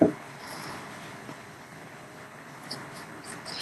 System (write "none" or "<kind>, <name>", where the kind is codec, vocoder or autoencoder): codec, HILCodec